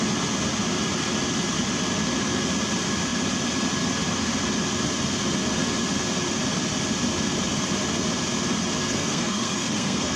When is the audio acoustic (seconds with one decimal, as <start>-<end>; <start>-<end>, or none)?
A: 0.0-8.8